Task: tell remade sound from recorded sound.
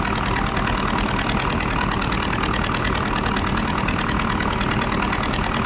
recorded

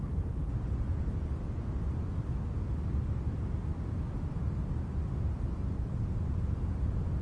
recorded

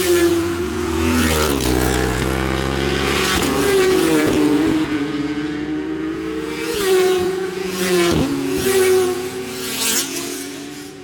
remade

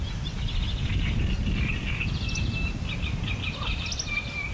recorded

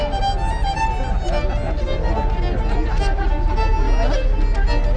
recorded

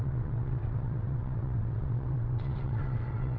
remade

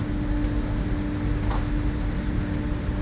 recorded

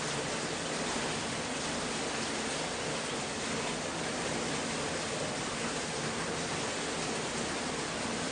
recorded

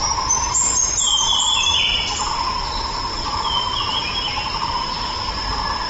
remade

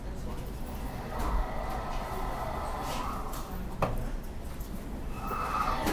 recorded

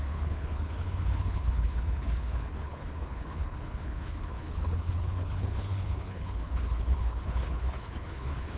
remade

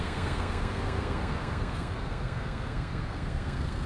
remade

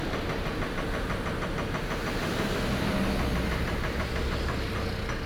recorded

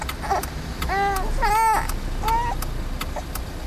recorded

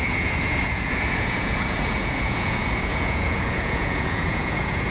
remade